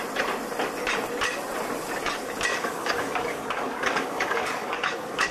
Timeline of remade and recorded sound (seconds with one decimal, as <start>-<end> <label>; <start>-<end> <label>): 0.0-2.5 recorded; 2.5-5.3 remade